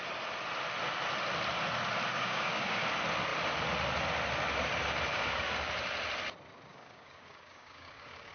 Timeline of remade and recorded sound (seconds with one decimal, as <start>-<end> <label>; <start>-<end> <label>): 0.0-2.1 recorded; 2.1-2.8 remade; 2.8-5.1 recorded; 5.1-5.7 remade; 5.7-6.7 recorded; 6.7-8.3 remade